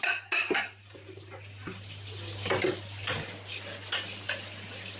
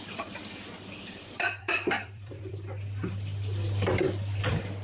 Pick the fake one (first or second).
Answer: second